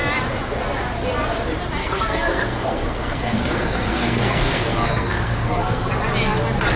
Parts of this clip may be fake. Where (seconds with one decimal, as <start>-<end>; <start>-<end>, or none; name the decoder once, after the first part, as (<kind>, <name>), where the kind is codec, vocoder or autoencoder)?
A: 1.8-5.9 (codec, SNAC)